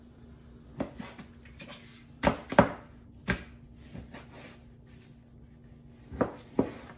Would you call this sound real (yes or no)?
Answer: yes